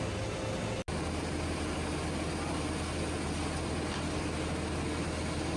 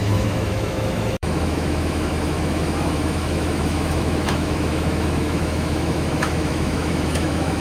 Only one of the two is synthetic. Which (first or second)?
second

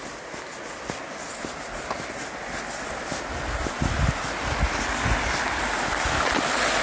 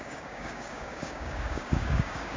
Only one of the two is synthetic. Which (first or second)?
second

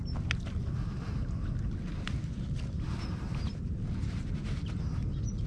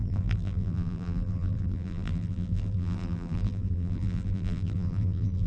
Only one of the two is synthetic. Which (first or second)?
second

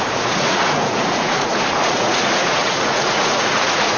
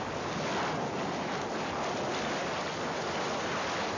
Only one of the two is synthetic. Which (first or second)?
first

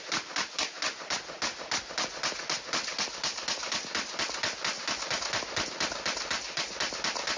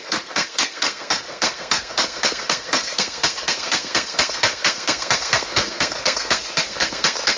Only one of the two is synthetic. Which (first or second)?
second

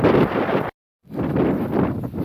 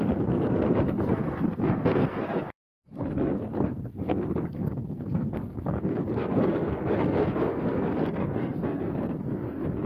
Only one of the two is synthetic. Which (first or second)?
second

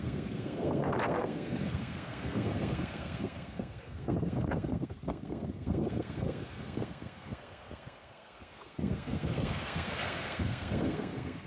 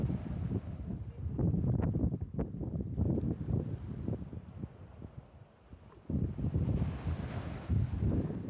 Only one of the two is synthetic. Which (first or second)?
first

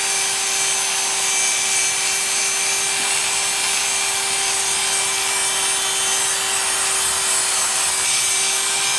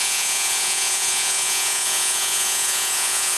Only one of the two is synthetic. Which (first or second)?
second